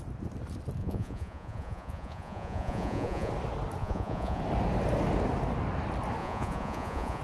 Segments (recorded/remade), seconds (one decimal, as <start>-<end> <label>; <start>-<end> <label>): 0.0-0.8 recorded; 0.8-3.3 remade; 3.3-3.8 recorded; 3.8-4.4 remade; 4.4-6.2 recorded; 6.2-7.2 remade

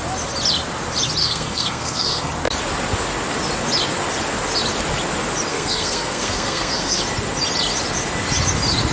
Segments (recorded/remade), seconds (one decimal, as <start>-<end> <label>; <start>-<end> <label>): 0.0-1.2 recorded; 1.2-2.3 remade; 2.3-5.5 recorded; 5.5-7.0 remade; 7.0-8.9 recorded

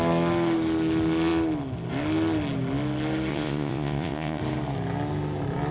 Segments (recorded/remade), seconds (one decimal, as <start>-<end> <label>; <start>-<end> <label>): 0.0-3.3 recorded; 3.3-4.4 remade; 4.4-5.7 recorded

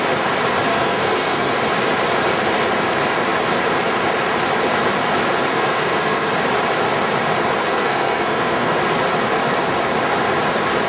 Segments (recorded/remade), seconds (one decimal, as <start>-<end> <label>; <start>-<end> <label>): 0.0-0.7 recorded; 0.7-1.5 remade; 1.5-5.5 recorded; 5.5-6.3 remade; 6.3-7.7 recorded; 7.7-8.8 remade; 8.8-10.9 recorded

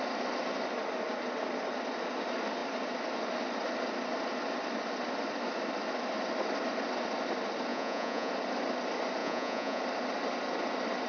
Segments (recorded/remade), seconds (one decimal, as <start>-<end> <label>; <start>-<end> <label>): 0.0-7.7 recorded; 7.7-8.3 remade; 8.3-9.2 recorded; 9.2-9.8 remade; 9.8-11.1 recorded

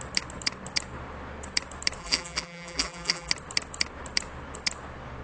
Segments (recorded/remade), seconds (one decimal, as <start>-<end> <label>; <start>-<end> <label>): 0.0-2.0 recorded; 2.0-3.3 remade; 3.3-5.2 recorded

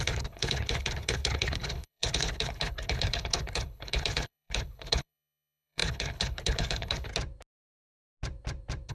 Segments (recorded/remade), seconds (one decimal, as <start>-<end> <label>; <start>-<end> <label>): 0.0-7.1 remade; 7.1-8.9 recorded

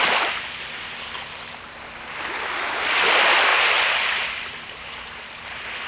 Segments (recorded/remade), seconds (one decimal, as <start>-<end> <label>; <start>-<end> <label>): 0.0-5.9 recorded